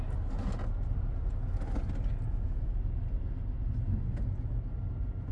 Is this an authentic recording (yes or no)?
yes